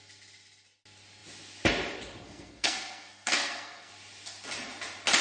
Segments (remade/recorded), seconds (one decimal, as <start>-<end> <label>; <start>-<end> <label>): 0.0-2.2 recorded; 2.2-3.9 remade; 3.9-5.2 recorded